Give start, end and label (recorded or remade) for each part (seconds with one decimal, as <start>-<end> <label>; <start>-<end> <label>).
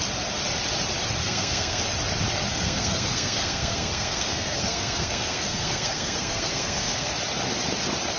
0.0-1.2 recorded; 1.2-1.8 remade; 1.8-2.5 recorded; 2.5-7.1 remade; 7.1-8.2 recorded